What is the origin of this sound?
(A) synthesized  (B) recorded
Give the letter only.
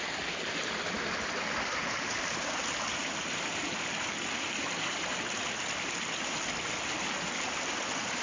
B